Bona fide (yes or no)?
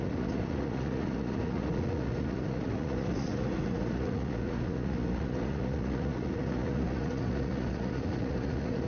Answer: no